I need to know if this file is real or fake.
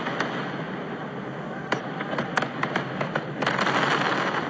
real